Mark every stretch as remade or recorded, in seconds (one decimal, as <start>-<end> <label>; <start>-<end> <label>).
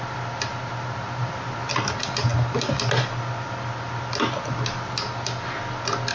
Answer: 0.0-6.1 recorded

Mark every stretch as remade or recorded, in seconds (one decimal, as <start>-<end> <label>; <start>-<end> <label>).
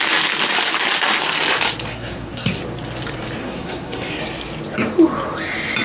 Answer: 0.0-1.9 recorded; 1.9-2.6 remade; 2.6-3.4 recorded; 3.4-4.2 remade; 4.2-5.8 recorded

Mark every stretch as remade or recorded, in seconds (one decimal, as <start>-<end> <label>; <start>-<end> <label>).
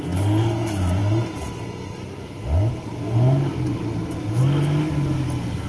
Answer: 0.0-5.7 recorded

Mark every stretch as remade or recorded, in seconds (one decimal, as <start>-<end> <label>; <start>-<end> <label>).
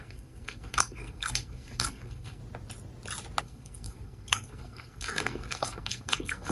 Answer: 0.0-2.4 remade; 2.4-3.4 recorded; 3.4-6.5 remade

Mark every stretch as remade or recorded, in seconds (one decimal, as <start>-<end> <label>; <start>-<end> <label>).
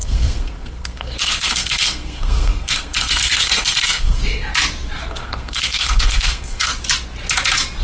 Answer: 0.0-4.2 remade; 4.2-5.1 recorded; 5.1-6.7 remade; 6.7-7.8 recorded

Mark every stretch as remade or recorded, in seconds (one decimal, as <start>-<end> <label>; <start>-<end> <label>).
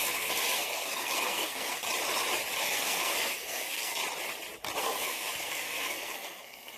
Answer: 0.0-1.8 remade; 1.8-2.6 recorded; 2.6-4.0 remade; 4.0-4.8 recorded; 4.8-6.8 remade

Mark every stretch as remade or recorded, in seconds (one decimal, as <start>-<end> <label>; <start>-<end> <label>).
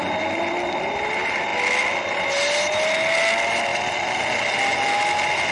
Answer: 0.0-5.5 recorded